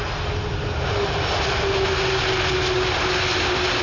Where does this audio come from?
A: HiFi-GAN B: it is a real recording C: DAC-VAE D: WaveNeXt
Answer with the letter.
B